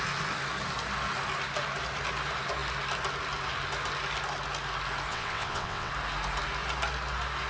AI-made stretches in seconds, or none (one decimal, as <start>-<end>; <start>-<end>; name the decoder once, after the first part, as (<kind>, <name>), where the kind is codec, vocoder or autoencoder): 5.1-5.9 (vocoder, WaveNeXt)